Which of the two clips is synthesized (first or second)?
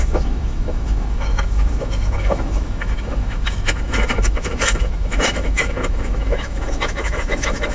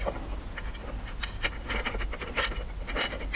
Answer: first